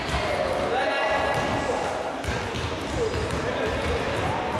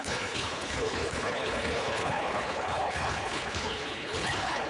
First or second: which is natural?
first